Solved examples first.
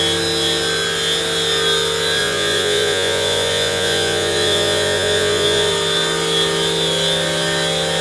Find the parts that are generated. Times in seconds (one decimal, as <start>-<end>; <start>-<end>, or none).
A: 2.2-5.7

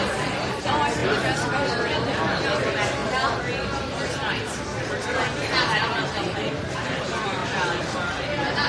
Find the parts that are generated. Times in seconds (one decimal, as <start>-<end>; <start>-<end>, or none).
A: 5.4-6.5

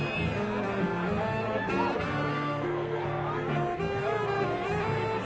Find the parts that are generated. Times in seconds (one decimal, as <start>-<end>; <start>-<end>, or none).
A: 2.3-3.0

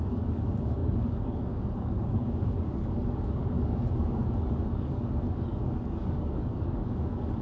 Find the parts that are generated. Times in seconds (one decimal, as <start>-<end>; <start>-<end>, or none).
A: 0.0-7.4

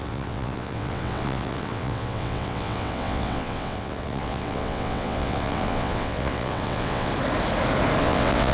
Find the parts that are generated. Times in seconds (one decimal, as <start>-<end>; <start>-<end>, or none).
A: 0.0-7.1; 8.0-8.5

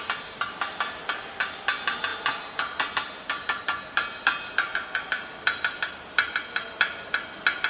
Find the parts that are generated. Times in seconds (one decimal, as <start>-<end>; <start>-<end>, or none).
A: none